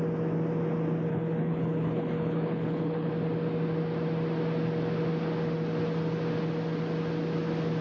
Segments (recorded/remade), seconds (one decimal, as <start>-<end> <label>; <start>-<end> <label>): 0.0-1.1 recorded; 1.1-3.1 remade; 3.1-7.8 recorded